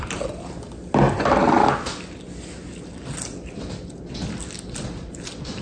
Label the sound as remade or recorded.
recorded